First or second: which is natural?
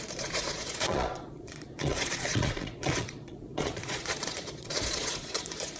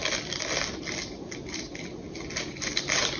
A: second